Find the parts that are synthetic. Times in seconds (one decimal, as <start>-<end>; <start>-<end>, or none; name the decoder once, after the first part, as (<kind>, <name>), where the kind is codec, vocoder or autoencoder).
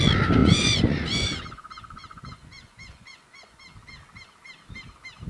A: 0.4-3.6 (vocoder, Vocos)